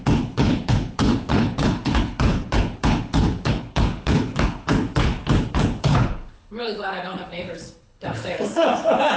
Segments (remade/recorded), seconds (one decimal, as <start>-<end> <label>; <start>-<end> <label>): 0.0-9.2 remade